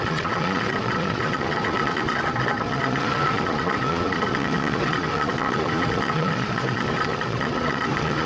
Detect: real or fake fake